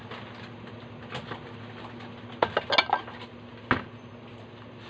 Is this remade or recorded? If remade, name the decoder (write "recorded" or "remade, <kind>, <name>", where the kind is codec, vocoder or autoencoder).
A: recorded